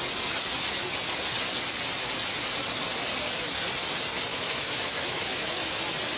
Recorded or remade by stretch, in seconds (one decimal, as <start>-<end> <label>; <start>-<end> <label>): 0.0-4.3 recorded; 4.3-5.7 remade; 5.7-6.2 recorded